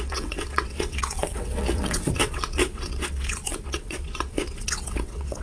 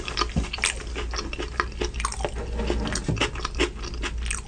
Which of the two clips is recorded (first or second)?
second